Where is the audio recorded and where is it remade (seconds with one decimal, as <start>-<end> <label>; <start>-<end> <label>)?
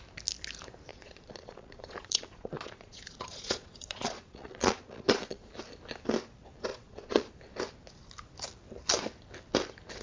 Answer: 0.0-0.9 recorded; 0.9-5.5 remade; 5.5-6.7 recorded; 6.7-7.3 remade; 7.3-10.0 recorded